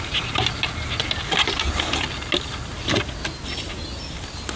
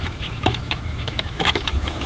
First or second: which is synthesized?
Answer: second